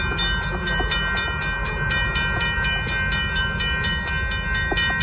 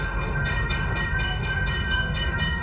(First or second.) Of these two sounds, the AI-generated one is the second